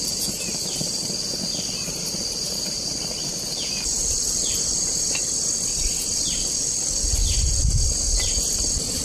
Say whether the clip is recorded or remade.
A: recorded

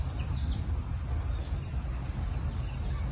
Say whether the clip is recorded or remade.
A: recorded